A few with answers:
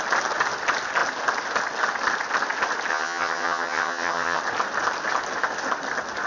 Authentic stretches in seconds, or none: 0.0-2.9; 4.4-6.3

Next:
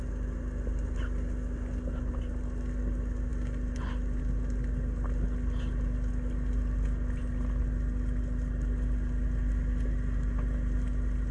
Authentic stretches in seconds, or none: 0.0-11.3

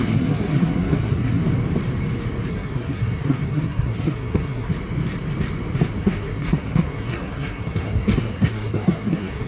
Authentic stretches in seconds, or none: 1.4-2.5; 4.7-6.0

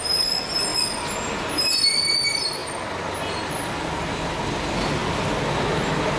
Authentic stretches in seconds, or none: 0.0-6.2

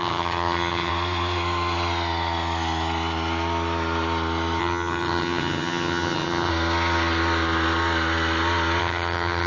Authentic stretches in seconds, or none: 0.9-4.6; 6.5-8.8

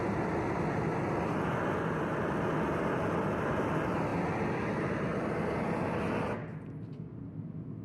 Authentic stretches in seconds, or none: 0.0-7.8

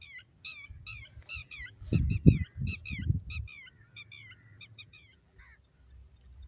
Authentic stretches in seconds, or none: 0.0-1.4; 2.0-4.5; 5.4-6.5